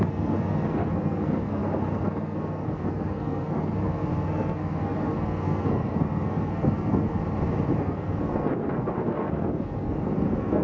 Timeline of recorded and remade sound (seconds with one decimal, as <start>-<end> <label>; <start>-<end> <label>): 0.0-7.2 remade; 7.2-7.8 recorded; 7.8-10.6 remade